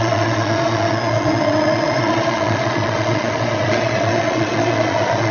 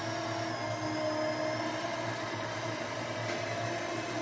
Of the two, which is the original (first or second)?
second